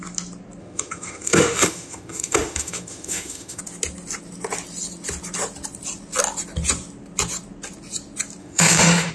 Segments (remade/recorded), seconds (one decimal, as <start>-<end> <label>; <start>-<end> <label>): 0.0-0.6 recorded; 0.6-3.6 remade; 3.6-8.4 recorded; 8.4-9.1 remade